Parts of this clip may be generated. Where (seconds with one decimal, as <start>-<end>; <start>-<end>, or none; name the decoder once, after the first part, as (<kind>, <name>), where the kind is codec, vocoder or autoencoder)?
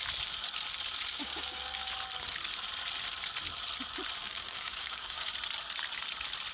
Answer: 1.1-1.9 (codec, DAC); 4.2-5.3